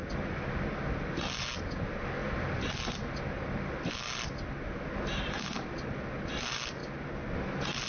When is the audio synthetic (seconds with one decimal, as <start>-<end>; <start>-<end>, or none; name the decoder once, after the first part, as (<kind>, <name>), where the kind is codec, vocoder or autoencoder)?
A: none